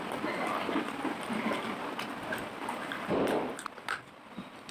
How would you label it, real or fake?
fake